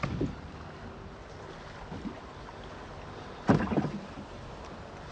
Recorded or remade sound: recorded